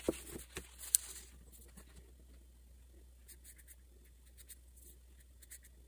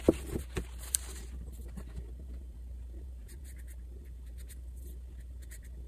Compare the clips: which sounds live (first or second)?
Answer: first